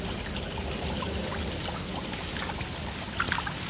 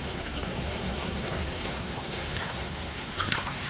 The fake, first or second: second